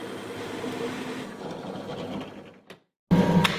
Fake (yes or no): no